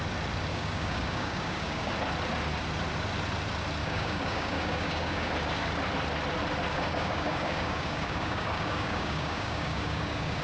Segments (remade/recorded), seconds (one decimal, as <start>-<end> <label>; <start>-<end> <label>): 0.0-0.5 recorded; 0.5-1.9 remade; 1.9-3.8 recorded; 3.8-5.3 remade; 5.3-6.7 recorded; 6.7-10.4 remade